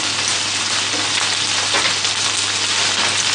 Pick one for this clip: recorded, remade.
recorded